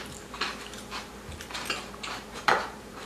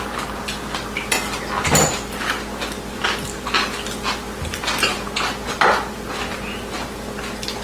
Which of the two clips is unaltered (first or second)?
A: second